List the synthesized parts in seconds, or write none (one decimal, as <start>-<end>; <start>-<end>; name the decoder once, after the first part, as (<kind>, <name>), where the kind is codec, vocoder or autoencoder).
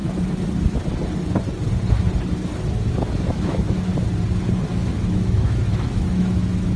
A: 3.3-3.9 (autoencoder, DAC-VAE); 4.7-6.8